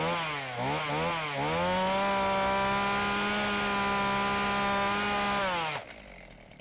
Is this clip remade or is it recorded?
recorded